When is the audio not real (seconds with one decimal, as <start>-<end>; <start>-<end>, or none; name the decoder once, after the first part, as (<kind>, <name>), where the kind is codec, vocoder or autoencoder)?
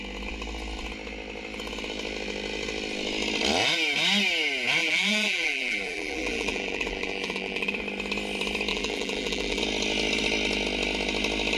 4.8-7.8 (vocoder, BigVGAN v2); 8.7-9.6